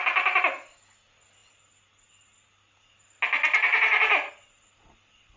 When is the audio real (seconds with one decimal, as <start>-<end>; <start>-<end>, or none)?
0.0-5.4